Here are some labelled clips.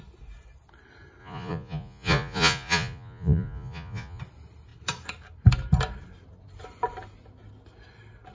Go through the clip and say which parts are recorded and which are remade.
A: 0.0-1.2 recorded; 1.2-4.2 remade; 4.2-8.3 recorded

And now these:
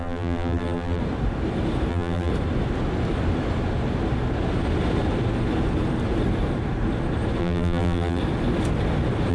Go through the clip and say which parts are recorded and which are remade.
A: 0.0-1.0 remade; 1.0-1.9 recorded; 1.9-2.3 remade; 2.3-7.4 recorded; 7.4-8.2 remade; 8.2-9.3 recorded

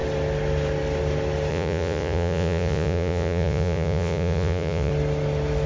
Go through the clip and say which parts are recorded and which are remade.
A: 0.0-1.5 recorded; 1.5-4.9 remade; 4.9-5.7 recorded